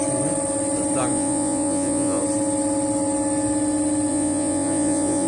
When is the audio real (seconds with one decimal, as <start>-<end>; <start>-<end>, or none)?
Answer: 0.0-1.1; 2.2-4.1

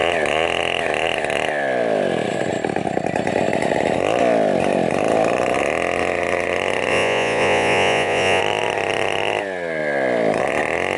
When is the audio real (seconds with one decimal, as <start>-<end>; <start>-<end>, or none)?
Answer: 0.0-6.9; 8.4-11.0

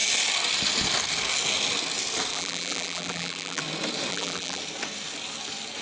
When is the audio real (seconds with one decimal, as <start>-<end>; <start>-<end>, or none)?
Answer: 0.0-2.3; 3.6-4.1; 4.6-5.8